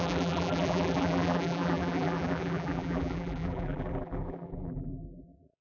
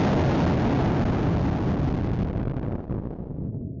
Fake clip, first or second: first